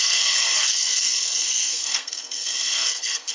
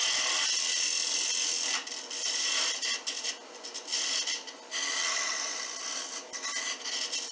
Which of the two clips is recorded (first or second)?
second